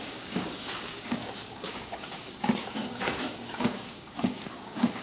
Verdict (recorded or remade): remade